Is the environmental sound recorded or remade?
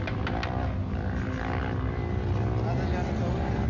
recorded